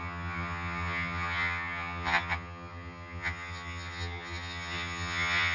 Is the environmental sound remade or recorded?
remade